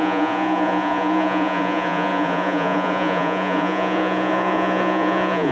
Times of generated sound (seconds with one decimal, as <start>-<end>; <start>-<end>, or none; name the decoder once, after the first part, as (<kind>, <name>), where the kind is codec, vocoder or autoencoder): 0.0-5.5 (vocoder, Vocos)